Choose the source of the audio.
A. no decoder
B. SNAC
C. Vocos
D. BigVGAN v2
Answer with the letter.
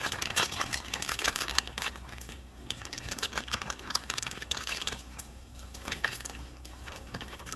B